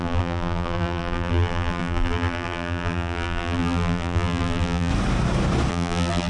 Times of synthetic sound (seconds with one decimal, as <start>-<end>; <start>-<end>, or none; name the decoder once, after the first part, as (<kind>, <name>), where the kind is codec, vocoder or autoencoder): 0.0-4.9 (vocoder, BigVGAN v2); 5.7-6.3